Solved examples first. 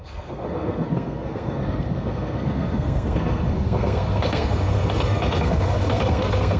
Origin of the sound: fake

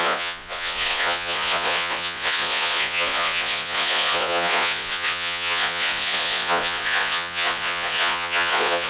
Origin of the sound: fake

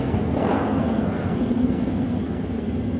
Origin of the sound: fake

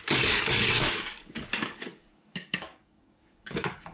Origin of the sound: fake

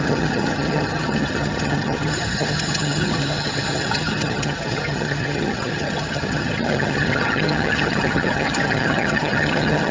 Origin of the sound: fake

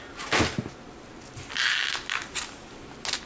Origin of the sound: real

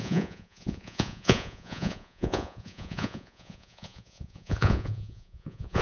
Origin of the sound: fake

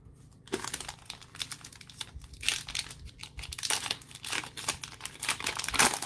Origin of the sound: real